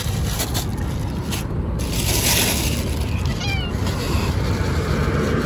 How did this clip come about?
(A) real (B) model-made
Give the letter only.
A